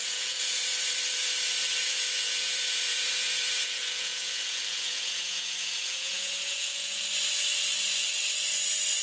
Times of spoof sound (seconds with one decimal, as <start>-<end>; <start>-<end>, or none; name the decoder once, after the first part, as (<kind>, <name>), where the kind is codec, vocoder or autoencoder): 0.0-0.6 (vocoder, Vocos); 1.8-7.0